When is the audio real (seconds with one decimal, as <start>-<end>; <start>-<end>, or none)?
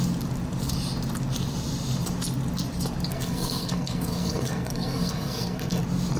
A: 0.0-3.1; 5.8-6.2